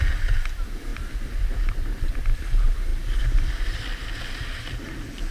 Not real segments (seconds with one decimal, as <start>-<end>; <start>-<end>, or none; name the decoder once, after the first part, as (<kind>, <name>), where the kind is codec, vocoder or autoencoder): 0.9-2.4 (vocoder, BigVGAN v2); 2.9-5.3